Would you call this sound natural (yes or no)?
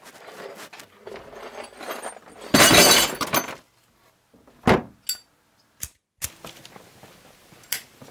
yes